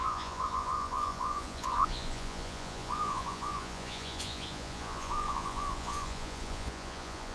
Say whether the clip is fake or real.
fake